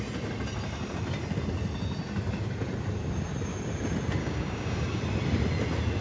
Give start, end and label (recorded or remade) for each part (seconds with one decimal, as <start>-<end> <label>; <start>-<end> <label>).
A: 0.0-4.2 recorded; 4.2-5.0 remade; 5.0-6.0 recorded